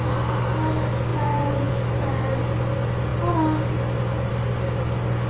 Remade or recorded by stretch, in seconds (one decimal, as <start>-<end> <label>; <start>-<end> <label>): 0.0-1.1 recorded; 1.1-1.7 remade; 1.7-5.3 recorded